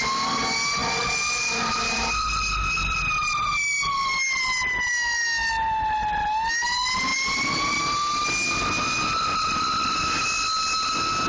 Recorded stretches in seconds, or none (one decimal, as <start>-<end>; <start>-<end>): 0.0-0.8; 4.5-7.1; 7.8-11.3